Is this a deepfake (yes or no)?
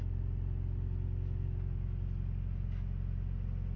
no